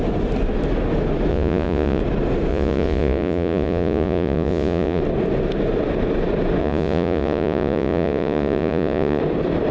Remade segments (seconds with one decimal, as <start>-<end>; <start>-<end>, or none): 1.3-2.0; 2.5-5.0; 6.6-9.2